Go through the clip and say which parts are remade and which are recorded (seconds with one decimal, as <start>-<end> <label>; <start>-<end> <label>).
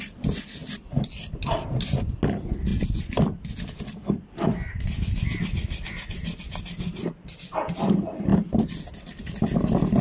0.0-10.0 recorded